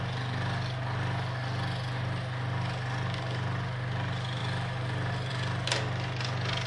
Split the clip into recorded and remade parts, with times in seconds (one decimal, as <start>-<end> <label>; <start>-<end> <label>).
0.0-6.7 recorded